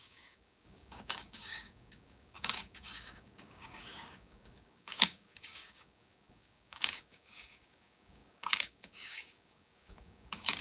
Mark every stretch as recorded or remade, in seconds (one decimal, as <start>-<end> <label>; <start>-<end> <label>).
0.0-10.6 remade